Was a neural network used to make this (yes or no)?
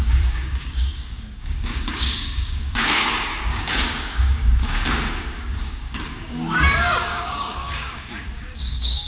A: yes